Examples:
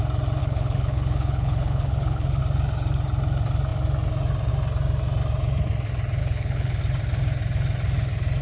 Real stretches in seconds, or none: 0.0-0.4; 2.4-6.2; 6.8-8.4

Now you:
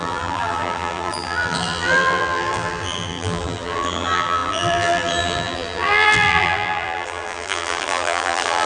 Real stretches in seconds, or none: none

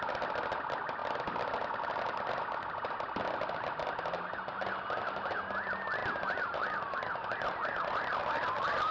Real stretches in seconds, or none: 0.0-6.0

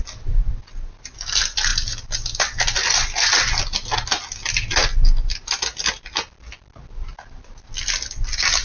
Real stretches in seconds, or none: 0.0-8.6

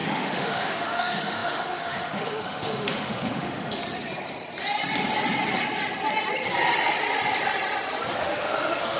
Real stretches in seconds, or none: 3.8-8.2